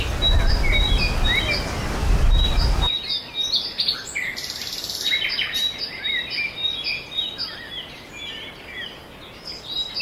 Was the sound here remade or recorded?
recorded